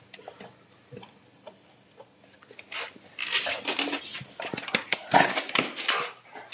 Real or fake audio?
real